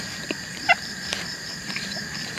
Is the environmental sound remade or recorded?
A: remade